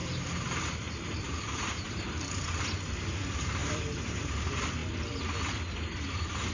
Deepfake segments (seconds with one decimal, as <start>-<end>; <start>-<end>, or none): 0.0-2.6; 3.6-4.3